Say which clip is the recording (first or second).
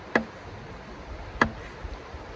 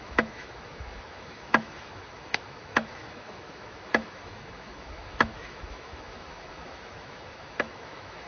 first